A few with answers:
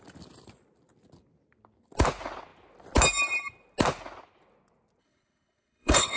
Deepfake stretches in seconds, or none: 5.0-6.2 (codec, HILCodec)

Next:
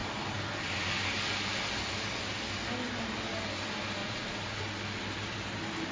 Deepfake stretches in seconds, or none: 4.0-4.6 (vocoder, Vocos)

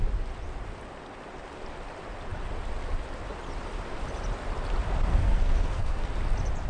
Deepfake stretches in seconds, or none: 5.1-6.1 (codec, SNAC)